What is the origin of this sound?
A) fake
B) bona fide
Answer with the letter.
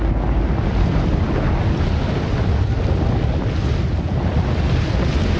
B